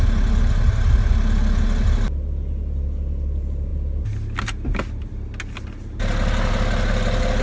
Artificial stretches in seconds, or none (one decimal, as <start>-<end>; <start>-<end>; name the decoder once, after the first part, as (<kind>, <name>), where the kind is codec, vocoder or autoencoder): none